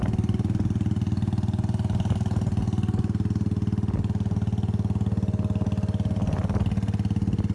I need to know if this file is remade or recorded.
recorded